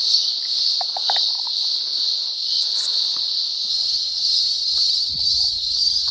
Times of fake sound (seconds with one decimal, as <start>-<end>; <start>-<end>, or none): 3.7-6.1